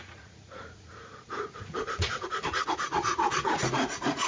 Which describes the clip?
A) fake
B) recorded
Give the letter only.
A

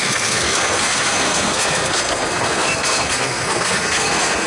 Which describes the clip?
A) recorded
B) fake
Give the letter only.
B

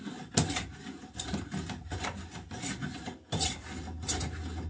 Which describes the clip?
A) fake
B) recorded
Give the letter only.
B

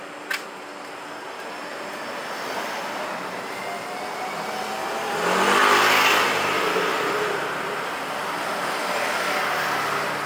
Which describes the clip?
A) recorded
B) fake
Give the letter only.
A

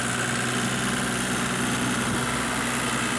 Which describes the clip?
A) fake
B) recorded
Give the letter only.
B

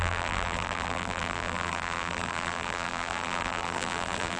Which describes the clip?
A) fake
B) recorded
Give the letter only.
A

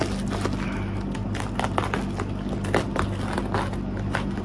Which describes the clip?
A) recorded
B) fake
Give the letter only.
A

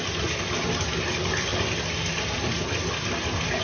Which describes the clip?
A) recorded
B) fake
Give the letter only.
A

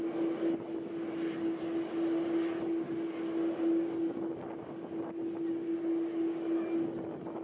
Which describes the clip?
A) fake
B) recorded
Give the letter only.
B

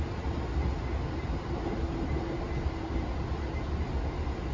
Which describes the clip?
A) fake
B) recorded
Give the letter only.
B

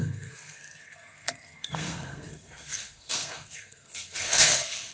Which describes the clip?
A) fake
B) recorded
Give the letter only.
A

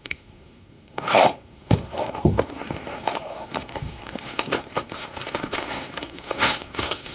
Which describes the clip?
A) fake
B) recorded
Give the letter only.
A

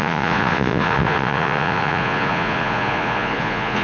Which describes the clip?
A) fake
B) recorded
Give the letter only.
A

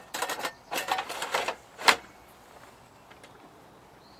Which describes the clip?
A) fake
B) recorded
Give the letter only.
B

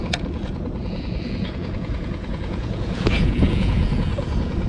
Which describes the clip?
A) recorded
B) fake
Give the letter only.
B